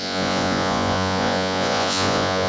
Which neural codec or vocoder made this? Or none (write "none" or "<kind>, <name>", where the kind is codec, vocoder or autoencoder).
vocoder, Vocos